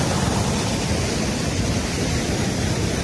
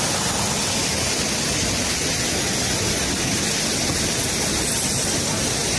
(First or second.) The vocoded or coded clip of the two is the first